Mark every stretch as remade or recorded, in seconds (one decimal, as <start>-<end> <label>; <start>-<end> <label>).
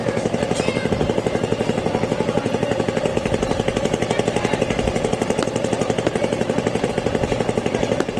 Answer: 0.0-0.9 remade; 0.9-8.2 recorded